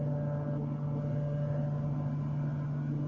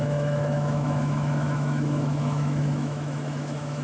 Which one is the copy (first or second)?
second